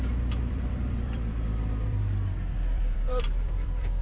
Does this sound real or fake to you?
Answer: fake